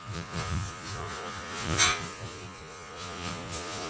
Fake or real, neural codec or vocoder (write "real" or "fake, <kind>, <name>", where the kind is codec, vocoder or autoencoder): fake, vocoder, Vocos